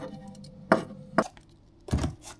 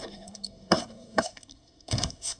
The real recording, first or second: first